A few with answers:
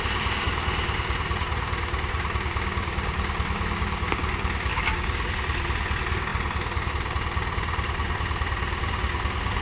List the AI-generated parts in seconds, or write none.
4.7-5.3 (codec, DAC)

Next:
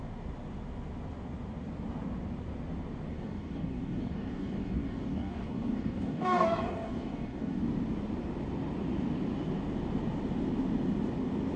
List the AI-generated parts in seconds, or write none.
3.1-7.6 (codec, DAC)

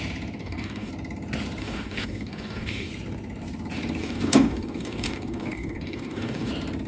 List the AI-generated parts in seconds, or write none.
0.4-0.9 (codec, DAC); 1.6-2.9; 4.0-6.5

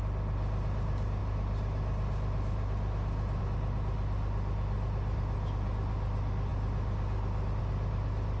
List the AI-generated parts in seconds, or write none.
none

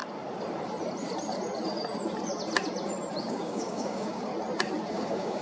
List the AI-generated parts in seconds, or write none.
3.2-4.3 (codec, DAC); 4.9-5.4

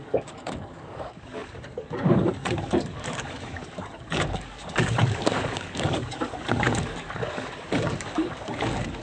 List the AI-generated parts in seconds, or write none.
0.0-9.0 (codec, DAC)